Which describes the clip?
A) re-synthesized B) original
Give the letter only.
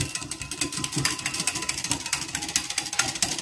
B